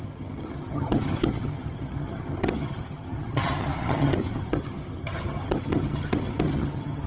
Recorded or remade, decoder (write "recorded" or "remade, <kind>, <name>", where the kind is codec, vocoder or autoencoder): remade, vocoder, HiFi-GAN